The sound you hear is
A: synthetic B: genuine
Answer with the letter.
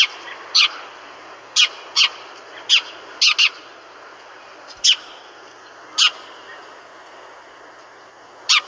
B